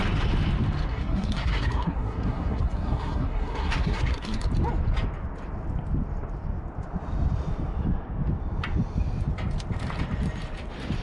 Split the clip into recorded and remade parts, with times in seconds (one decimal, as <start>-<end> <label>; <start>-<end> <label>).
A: 0.0-0.9 recorded; 0.9-4.5 remade; 4.5-11.0 recorded